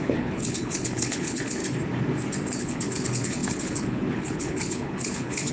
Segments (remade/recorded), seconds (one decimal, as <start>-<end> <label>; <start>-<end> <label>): 0.0-1.6 remade; 1.6-2.6 recorded; 2.6-5.5 remade